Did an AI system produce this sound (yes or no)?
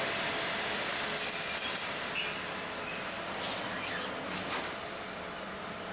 no